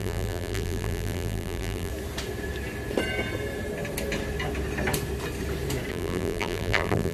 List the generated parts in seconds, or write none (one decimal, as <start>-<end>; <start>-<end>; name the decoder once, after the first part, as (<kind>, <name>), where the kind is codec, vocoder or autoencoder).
0.0-1.9 (vocoder, BigVGAN v2); 5.9-7.1

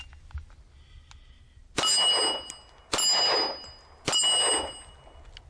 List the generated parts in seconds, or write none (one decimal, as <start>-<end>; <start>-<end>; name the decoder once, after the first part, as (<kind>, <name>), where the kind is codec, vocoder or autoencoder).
none

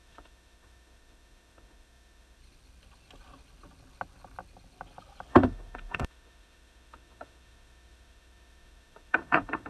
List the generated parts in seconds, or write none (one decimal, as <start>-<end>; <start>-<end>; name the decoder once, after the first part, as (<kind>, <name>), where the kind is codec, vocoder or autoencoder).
0.0-2.4 (autoencoder, DAC-VAE); 5.3-9.7

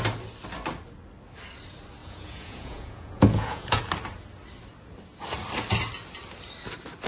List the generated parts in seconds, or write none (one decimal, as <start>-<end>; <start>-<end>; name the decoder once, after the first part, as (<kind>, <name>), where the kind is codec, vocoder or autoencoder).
2.0-3.8 (vocoder, Vocos)

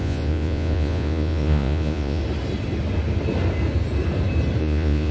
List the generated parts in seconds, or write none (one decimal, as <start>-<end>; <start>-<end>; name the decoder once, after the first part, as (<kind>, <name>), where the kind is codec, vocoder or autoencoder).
0.0-2.2 (vocoder, Vocos); 4.6-5.1